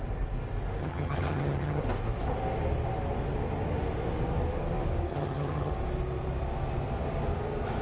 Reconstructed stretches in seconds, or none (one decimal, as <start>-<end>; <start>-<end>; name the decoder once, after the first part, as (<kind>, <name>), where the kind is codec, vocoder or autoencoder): 0.8-1.8 (vocoder, HiFi-GAN); 5.1-5.7